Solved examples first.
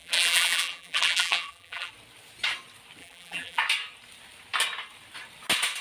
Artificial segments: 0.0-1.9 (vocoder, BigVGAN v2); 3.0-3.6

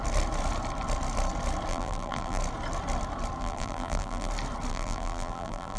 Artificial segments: 1.7-2.4 (vocoder, BigVGAN v2); 3.4-4.3; 4.7-5.8

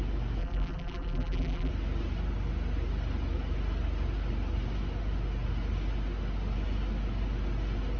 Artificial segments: 0.4-1.7 (vocoder, BigVGAN v2)